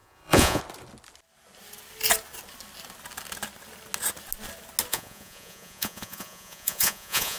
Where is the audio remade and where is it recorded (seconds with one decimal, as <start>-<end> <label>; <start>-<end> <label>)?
0.0-0.6 remade; 0.6-4.9 recorded; 4.9-7.4 remade